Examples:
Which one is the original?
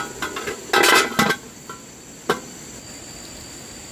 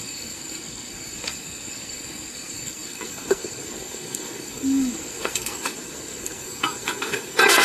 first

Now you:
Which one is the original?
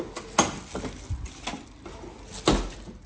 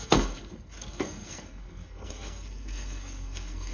first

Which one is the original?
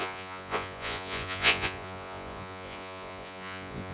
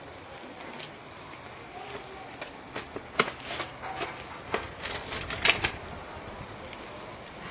second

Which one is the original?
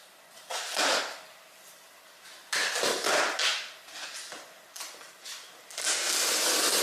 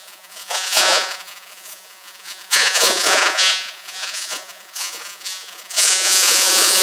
first